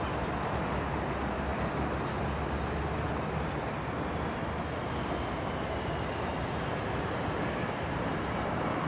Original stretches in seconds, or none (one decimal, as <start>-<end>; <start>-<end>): 0.0-8.9